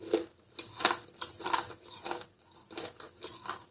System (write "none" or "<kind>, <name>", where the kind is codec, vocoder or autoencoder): none